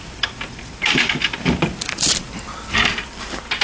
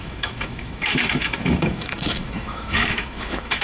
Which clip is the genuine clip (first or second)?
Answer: first